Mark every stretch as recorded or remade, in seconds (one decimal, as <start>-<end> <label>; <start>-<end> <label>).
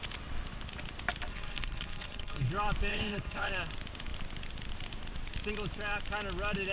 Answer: 0.0-1.3 recorded; 1.3-2.5 remade; 2.5-2.9 recorded; 2.9-3.5 remade; 3.5-6.7 recorded